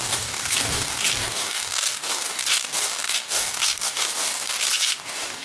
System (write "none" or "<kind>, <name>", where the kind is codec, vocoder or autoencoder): codec, DAC